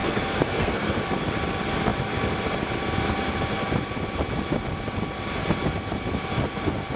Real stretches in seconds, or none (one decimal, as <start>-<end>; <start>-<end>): 1.0-7.0